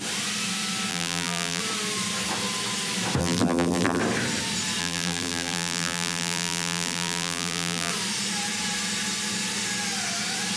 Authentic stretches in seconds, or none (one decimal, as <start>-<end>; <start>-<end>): 0.0-0.9; 1.6-3.2; 4.0-4.8; 7.9-10.6